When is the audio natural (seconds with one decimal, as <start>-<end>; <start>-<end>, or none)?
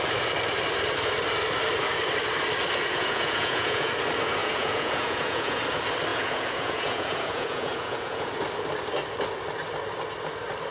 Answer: 0.0-2.9; 3.9-4.4; 5.6-6.1; 8.3-10.7